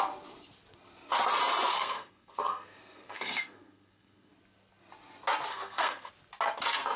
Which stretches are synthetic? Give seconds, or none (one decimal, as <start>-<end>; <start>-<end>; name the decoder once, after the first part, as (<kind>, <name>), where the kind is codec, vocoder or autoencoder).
1.7-4.3 (codec, SNAC); 5.5-6.1